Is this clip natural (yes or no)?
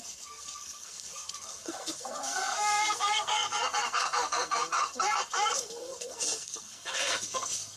no